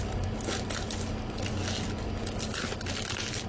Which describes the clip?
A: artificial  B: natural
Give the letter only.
B